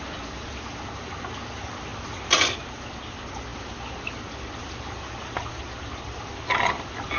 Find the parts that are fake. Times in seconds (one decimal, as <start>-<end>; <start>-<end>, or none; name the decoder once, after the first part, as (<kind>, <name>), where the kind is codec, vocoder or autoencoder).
none